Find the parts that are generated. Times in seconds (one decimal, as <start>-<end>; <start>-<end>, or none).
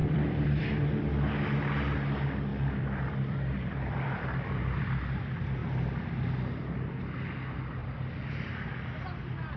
0.0-0.6; 2.5-4.8; 7.8-8.5